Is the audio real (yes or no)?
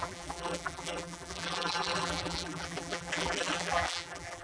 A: no